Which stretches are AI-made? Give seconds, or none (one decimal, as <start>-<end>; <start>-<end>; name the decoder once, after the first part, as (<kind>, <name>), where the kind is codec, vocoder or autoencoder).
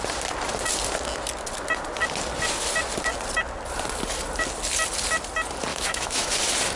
5.7-6.3 (autoencoder, DAC-VAE)